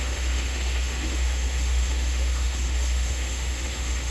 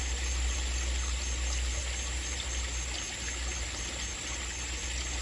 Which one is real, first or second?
second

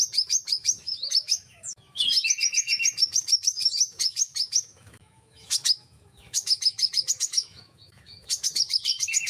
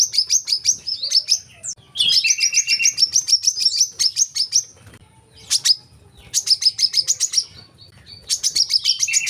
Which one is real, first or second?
second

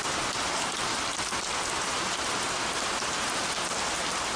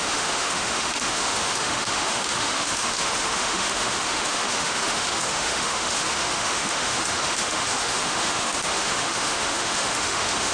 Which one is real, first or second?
first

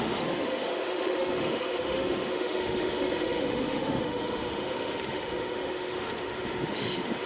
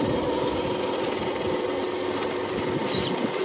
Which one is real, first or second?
second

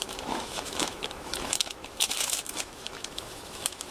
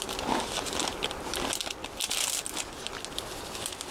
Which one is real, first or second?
second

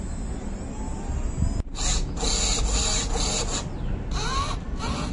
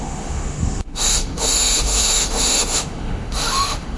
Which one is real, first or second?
first